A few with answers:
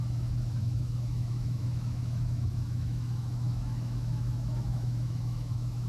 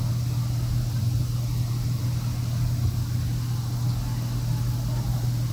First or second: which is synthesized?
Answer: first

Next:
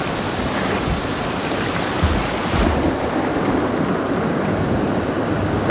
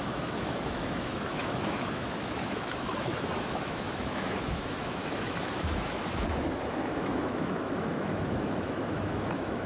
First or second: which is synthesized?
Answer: second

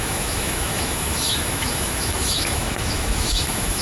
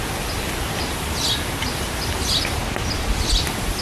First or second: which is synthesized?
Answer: first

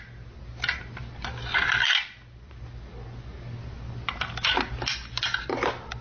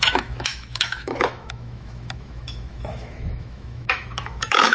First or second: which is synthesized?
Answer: second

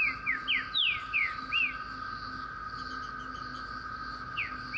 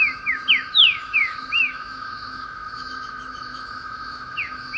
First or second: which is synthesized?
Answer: second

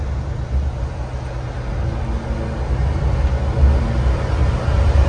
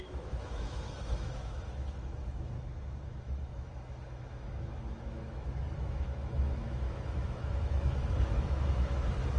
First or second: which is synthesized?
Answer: second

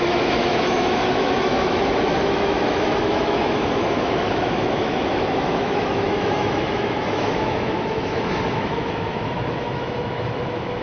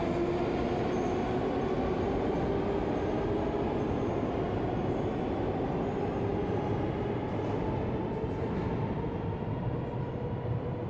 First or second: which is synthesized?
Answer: first